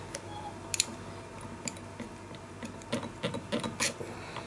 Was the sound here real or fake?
real